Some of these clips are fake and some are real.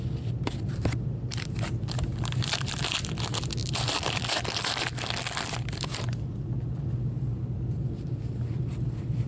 fake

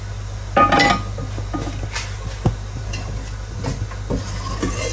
real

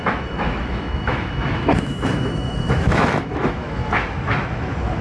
fake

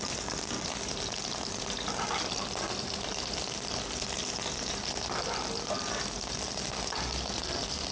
real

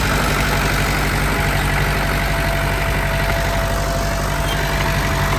real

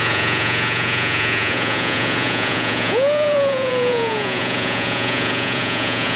fake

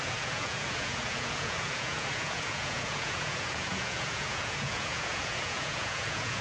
fake